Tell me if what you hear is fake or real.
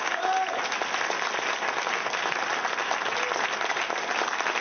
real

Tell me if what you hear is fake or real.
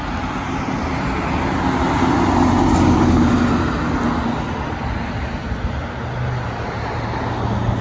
real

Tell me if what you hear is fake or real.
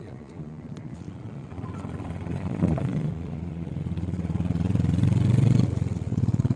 fake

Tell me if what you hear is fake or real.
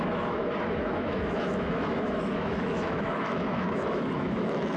fake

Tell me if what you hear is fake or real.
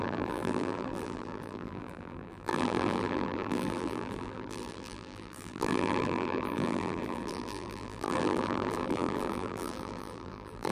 fake